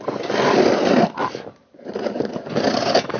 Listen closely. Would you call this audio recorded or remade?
recorded